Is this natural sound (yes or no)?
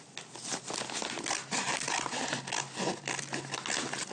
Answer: yes